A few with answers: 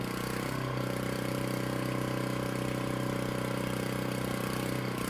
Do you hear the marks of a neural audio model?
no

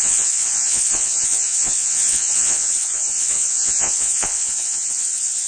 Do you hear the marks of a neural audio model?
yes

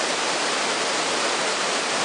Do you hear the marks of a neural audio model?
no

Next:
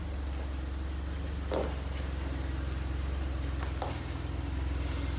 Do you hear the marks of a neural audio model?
no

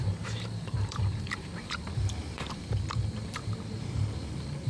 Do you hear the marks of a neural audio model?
yes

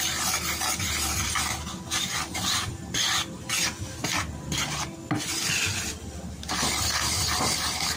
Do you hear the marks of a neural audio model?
yes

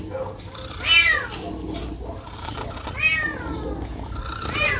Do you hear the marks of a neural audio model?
no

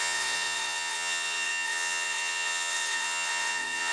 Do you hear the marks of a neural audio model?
yes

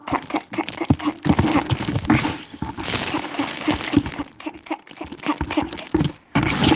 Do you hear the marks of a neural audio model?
no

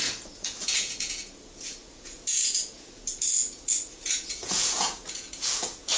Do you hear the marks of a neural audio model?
yes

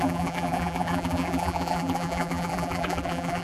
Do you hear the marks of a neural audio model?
yes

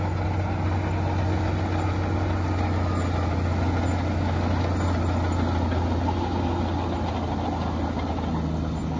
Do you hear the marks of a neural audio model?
no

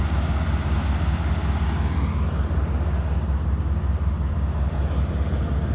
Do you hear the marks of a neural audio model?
no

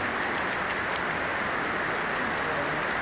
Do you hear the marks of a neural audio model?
no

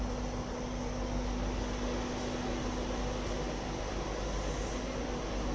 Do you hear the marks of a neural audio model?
no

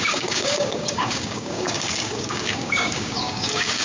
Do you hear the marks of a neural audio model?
yes